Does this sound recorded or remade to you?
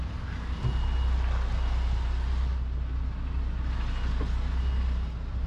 recorded